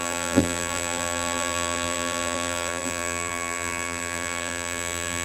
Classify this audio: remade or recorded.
remade